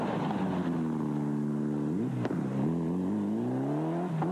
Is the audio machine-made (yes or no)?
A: no